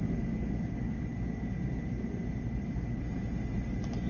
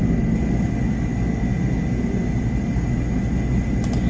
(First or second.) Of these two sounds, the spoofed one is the first